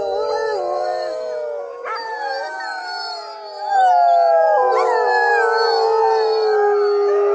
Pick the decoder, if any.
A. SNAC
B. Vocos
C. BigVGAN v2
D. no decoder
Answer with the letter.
D